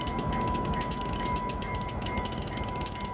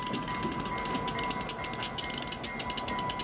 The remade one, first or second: first